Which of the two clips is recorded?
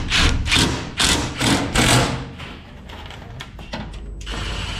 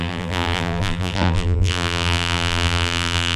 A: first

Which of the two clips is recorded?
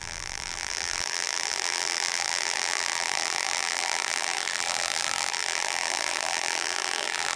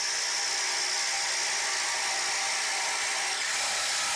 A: second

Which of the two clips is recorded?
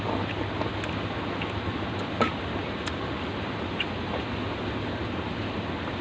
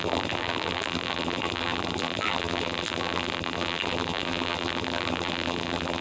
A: first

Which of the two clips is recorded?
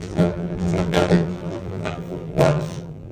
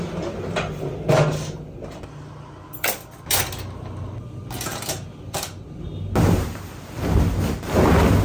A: second